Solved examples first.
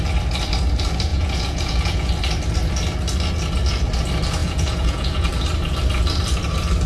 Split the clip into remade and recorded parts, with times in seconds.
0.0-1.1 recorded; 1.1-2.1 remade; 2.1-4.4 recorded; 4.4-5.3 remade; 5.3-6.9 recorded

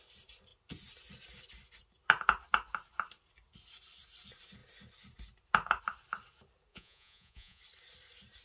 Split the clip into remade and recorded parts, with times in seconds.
0.0-6.7 recorded; 6.7-7.6 remade; 7.6-8.4 recorded

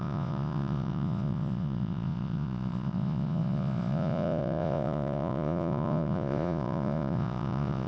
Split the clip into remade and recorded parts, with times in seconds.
0.0-7.9 remade

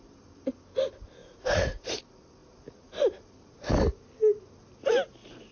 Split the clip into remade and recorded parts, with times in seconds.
0.0-1.2 recorded; 1.2-2.0 remade; 2.0-5.5 recorded